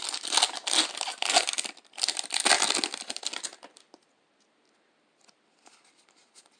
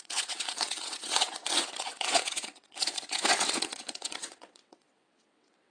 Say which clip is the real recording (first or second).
first